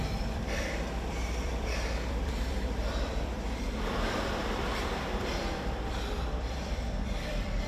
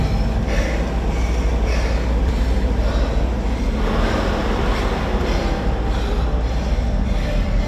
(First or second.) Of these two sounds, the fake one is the first